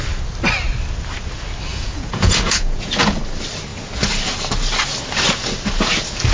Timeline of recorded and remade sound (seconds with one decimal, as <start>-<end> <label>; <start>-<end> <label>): 0.0-1.7 recorded; 1.7-3.2 remade; 3.2-6.3 recorded